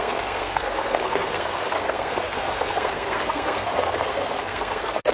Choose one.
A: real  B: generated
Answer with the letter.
B